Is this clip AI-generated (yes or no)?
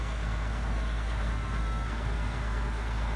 yes